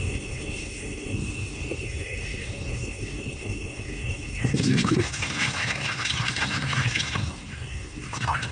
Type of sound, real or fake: fake